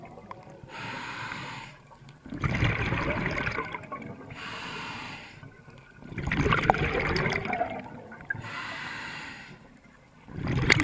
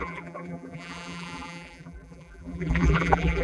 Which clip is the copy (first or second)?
second